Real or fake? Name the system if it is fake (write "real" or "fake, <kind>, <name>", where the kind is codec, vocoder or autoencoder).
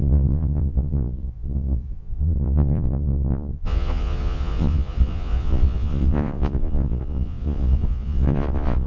fake, vocoder, Vocos